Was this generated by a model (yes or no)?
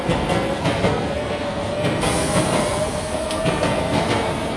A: yes